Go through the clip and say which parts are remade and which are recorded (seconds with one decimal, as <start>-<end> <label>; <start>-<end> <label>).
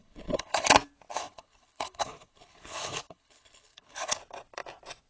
0.0-0.7 remade; 0.7-1.1 recorded; 1.1-4.2 remade; 4.2-5.1 recorded